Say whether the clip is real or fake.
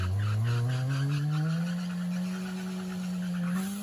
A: real